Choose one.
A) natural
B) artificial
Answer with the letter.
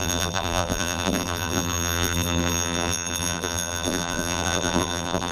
B